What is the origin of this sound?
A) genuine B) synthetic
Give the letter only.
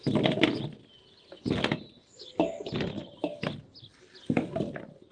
A